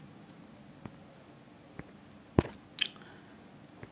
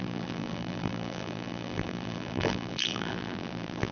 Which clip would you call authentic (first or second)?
first